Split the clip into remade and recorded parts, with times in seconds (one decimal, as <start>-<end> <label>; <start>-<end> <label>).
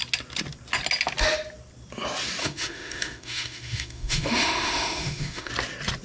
0.0-2.4 recorded; 2.4-5.5 remade; 5.5-6.0 recorded